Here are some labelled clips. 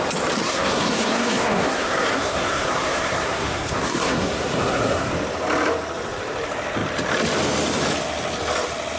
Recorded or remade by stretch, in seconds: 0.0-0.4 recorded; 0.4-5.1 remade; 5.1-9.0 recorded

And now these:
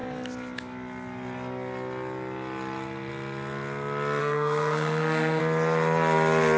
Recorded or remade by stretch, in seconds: 0.0-4.2 recorded; 4.2-5.4 remade; 5.4-6.6 recorded

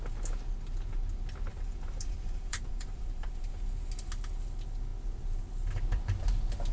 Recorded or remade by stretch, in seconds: 0.0-1.5 recorded; 1.5-3.5 remade; 3.5-6.7 recorded

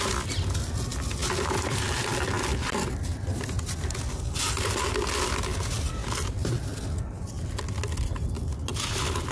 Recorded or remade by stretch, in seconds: 0.0-9.3 recorded

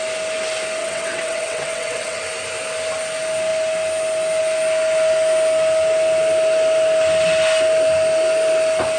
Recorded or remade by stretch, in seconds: 0.0-0.8 recorded; 0.8-2.2 remade; 2.2-9.0 recorded